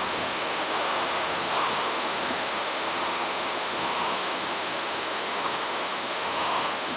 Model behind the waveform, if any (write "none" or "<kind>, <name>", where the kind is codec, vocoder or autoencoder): autoencoder, DAC-VAE